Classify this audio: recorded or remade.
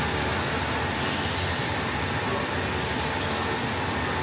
recorded